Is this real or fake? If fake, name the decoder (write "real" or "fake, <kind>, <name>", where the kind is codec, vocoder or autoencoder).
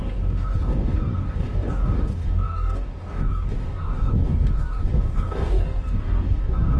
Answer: fake, codec, DAC